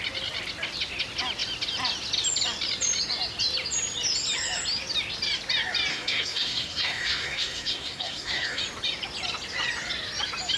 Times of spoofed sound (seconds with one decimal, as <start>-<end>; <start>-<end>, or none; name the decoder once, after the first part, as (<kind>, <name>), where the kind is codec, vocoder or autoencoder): 5.9-8.6 (codec, SNAC)